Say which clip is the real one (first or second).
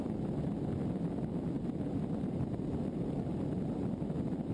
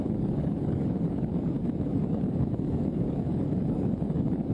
first